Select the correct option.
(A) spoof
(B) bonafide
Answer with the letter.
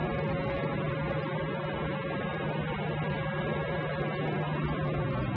B